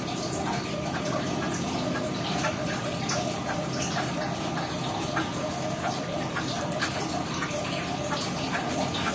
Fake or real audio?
real